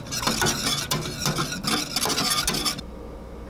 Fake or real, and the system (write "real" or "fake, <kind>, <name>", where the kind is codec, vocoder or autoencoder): real